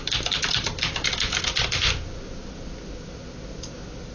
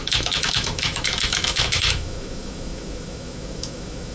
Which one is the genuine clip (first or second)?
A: first